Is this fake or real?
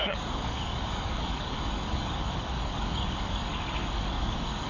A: fake